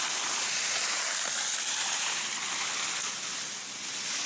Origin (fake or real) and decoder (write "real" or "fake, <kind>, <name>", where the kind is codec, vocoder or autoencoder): real